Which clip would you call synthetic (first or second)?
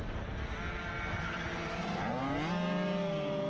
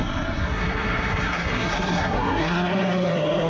second